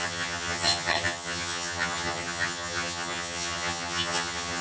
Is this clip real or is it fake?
fake